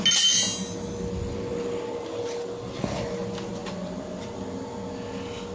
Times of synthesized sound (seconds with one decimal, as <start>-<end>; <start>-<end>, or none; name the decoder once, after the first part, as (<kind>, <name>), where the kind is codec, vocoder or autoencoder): none